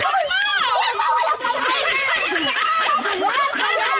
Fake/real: fake